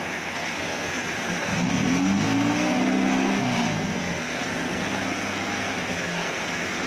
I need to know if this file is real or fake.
fake